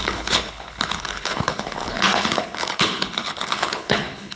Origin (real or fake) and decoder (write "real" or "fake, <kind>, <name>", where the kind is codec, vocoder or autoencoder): fake, codec, HILCodec